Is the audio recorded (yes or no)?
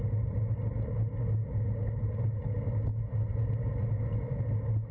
yes